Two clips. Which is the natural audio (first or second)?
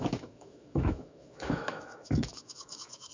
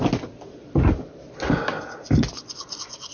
second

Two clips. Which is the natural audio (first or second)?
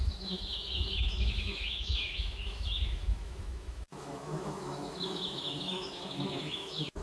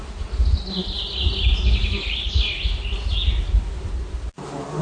second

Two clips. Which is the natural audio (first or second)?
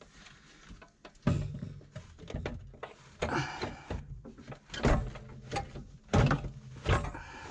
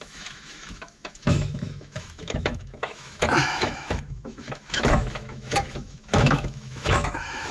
first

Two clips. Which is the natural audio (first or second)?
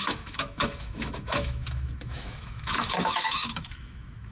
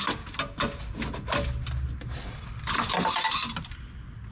second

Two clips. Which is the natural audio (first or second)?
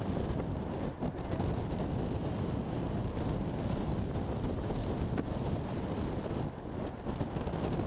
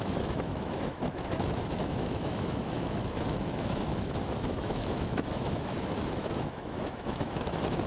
first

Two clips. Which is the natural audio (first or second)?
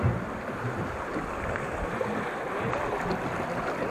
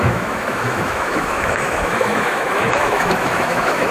first